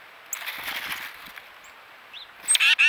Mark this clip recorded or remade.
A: recorded